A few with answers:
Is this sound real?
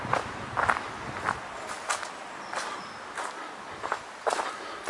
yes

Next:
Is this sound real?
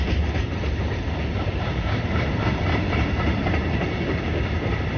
no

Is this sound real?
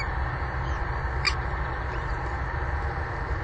yes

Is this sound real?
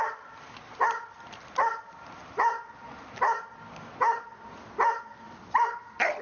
yes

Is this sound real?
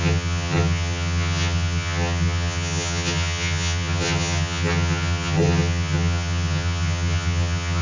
no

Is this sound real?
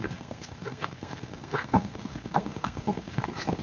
no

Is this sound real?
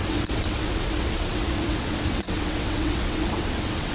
no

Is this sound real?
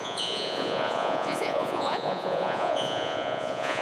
no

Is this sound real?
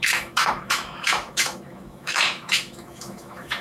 no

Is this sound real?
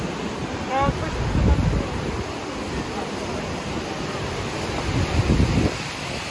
yes